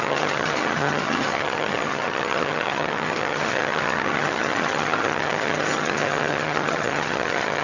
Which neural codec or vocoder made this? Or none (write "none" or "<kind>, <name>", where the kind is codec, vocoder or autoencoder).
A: vocoder, HiFi-GAN